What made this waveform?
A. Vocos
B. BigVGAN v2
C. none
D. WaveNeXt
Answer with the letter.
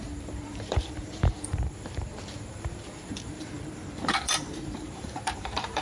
B